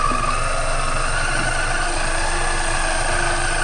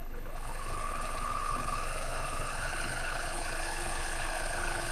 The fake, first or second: second